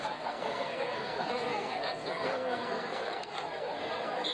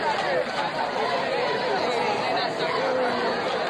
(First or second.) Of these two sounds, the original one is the second